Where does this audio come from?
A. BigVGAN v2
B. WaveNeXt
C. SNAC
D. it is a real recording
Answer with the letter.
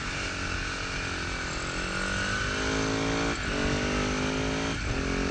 D